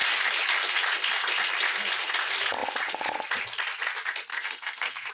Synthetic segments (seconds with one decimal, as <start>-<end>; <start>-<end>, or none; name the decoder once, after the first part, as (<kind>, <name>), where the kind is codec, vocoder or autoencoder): 4.3-5.1 (codec, SNAC)